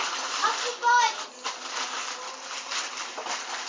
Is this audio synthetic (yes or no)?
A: no